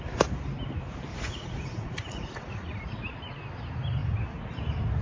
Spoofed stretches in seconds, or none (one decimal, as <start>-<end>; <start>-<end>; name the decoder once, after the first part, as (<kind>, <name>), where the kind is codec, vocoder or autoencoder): 1.1-2.8 (vocoder, Vocos)